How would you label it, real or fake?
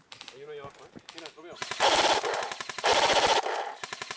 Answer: real